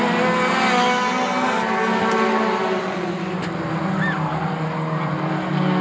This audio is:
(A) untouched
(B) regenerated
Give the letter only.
A